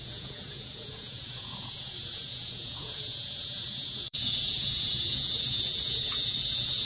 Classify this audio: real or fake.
fake